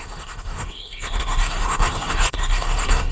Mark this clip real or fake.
fake